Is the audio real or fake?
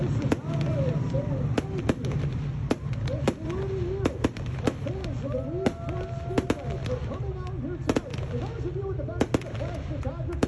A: real